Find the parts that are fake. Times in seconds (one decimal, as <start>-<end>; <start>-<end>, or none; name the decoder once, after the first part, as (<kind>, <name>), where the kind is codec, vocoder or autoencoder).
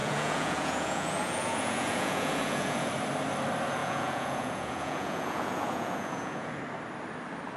0.0-2.9 (vocoder, Vocos); 3.8-6.6